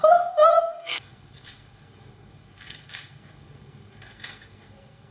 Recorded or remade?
remade